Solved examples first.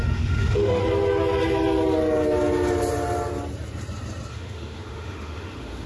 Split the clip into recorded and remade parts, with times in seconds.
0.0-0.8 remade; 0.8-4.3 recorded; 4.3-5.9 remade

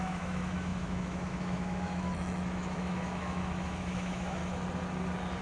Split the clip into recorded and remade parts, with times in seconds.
0.0-4.4 remade; 4.4-5.4 recorded

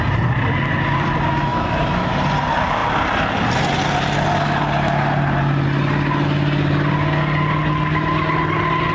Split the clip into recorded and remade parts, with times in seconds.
0.0-1.5 recorded; 1.5-2.1 remade; 2.1-8.9 recorded

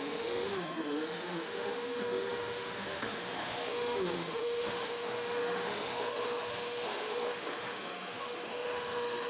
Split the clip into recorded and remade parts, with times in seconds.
0.0-9.3 remade

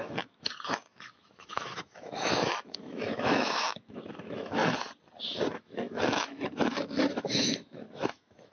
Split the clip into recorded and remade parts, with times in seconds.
0.0-4.6 remade; 4.6-5.5 recorded; 5.5-8.5 remade

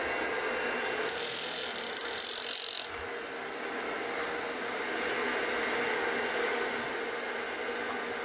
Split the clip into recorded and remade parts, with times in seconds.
0.0-8.2 recorded

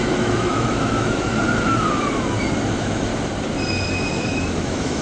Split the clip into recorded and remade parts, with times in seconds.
0.0-1.3 remade; 1.3-2.7 recorded; 2.7-3.1 remade; 3.1-4.1 recorded; 4.1-5.0 remade

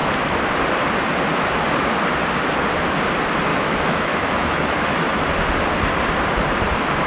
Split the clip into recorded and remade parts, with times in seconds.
0.0-3.5 recorded; 3.5-5.2 remade; 5.2-7.1 recorded